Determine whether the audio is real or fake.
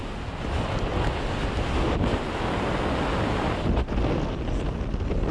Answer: real